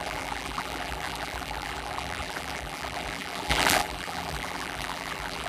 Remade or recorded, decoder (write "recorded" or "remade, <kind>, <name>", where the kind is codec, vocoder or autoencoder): remade, vocoder, BigVGAN v2